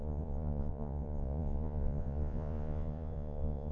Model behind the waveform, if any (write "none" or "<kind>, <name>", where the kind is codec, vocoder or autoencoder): vocoder, Vocos